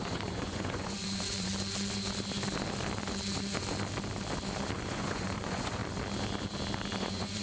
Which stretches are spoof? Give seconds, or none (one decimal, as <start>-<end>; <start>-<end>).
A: 0.0-1.5; 4.8-5.8; 7.0-7.4